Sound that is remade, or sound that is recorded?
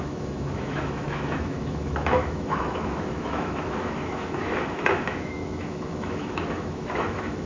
remade